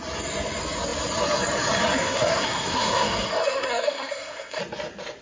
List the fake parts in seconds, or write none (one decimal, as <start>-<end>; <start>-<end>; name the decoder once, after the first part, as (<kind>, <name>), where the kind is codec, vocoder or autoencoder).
2.0-4.6 (codec, SNAC)